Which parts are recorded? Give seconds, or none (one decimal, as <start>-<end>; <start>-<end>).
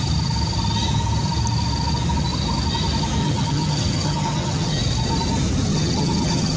0.0-3.2; 4.8-5.7